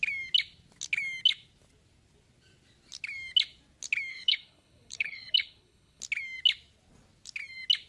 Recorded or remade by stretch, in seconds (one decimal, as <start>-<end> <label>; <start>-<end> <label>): 0.0-4.1 recorded; 4.1-6.0 remade; 6.0-7.9 recorded

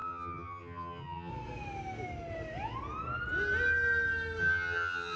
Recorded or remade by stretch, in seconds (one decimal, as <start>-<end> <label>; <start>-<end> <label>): 0.0-1.3 remade; 1.3-4.4 recorded; 4.4-5.2 remade

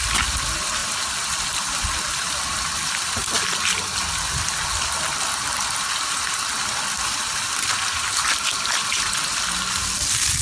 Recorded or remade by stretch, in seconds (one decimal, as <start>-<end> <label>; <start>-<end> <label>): 0.0-10.4 recorded